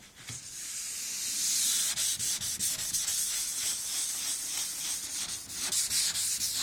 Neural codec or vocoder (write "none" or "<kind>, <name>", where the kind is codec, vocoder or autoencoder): none